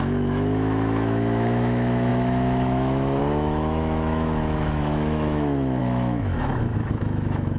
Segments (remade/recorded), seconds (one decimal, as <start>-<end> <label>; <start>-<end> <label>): 0.0-7.6 remade